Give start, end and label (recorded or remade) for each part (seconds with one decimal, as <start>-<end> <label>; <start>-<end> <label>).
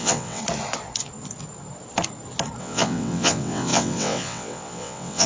0.0-0.4 remade; 0.4-2.6 recorded; 2.6-5.3 remade